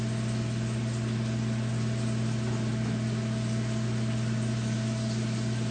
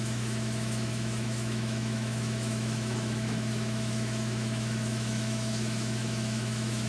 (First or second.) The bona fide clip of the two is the first